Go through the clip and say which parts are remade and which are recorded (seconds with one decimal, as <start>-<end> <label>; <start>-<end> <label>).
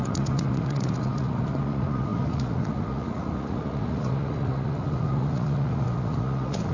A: 0.0-6.7 remade